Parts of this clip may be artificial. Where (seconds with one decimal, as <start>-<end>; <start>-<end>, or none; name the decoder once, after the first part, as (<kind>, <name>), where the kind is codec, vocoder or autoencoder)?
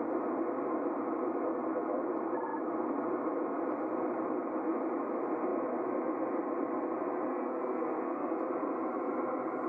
7.3-8.4 (codec, SNAC)